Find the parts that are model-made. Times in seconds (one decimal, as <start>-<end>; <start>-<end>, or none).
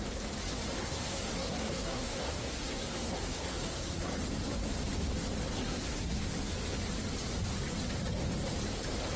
0.8-4.1; 5.6-6.2